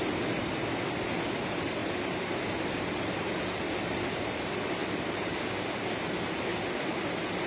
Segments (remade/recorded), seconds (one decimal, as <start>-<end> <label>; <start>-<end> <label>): 0.0-1.8 remade; 1.8-3.6 recorded; 3.6-6.5 remade; 6.5-7.0 recorded; 7.0-7.5 remade